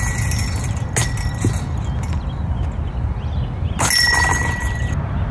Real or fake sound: real